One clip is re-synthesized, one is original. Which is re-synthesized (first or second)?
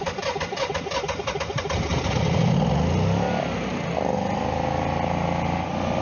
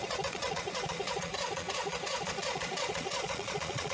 second